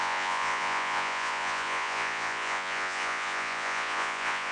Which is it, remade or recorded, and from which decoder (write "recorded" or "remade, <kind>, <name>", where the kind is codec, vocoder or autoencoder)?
remade, vocoder, Vocos